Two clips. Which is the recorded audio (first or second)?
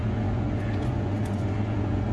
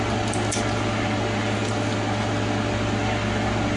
second